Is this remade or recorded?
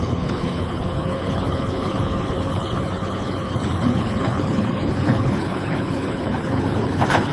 remade